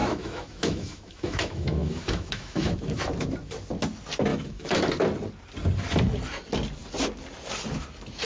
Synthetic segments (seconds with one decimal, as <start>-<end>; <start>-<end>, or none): 0.0-3.0; 4.3-4.8